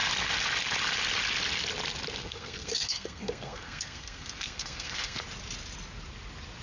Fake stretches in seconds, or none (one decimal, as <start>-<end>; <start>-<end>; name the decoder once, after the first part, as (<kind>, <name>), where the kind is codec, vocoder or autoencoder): 2.2-5.2 (codec, SNAC)